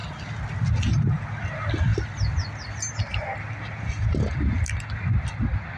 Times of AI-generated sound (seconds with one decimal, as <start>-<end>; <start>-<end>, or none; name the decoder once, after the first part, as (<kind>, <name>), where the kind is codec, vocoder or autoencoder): none